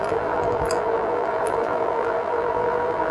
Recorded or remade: remade